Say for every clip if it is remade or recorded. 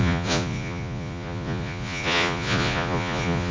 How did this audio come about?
remade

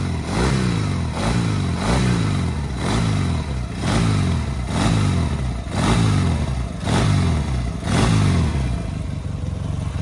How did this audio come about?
recorded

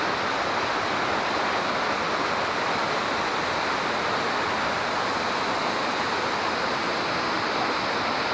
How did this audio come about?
recorded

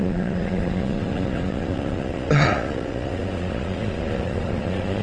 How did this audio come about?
remade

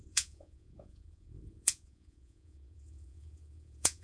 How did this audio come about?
remade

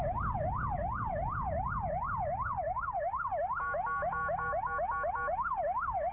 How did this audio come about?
recorded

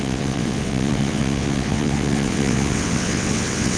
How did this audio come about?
remade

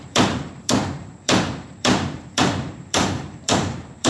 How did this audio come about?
remade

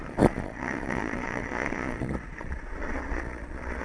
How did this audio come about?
remade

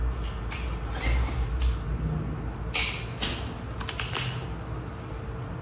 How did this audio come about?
recorded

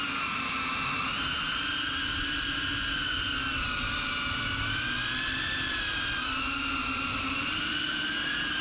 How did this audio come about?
recorded